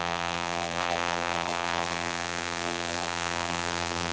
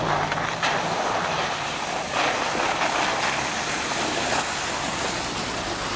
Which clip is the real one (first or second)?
second